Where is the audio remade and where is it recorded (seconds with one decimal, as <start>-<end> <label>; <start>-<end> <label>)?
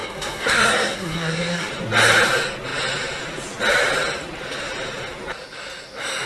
0.0-1.7 remade; 1.7-6.3 recorded